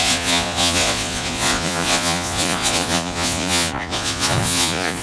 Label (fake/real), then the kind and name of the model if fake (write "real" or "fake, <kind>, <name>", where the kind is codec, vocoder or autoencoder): fake, vocoder, Vocos